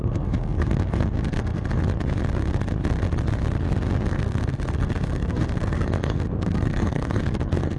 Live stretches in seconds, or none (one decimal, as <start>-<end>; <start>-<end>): 1.8-4.1